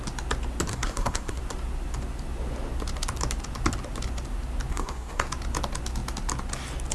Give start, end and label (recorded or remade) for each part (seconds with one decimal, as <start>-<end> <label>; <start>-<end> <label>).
0.0-0.7 recorded; 0.7-1.4 remade; 1.4-4.7 recorded; 4.7-5.3 remade; 5.3-6.9 recorded